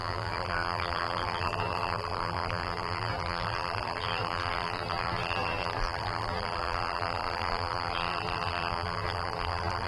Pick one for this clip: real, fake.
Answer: fake